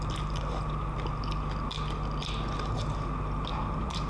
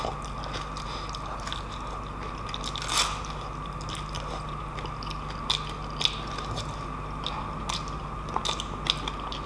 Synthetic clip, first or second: first